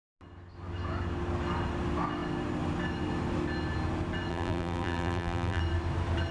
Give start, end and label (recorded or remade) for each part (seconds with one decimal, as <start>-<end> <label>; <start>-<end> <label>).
0.0-4.3 recorded; 4.3-5.6 remade; 5.6-6.3 recorded